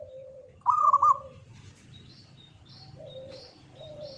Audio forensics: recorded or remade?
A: remade